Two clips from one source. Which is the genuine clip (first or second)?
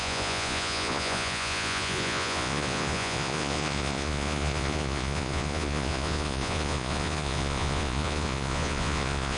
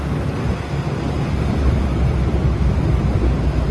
second